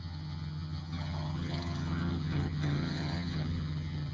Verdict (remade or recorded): remade